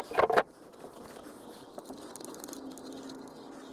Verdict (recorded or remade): recorded